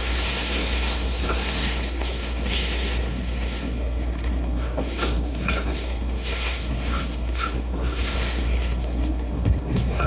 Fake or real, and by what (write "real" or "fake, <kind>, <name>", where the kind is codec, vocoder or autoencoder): fake, codec, SNAC